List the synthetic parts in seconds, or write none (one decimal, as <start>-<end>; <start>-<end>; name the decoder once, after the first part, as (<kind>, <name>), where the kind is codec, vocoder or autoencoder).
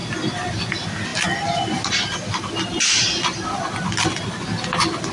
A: none